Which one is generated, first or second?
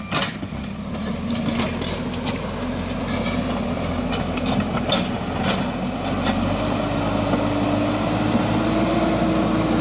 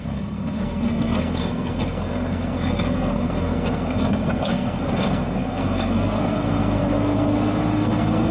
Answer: second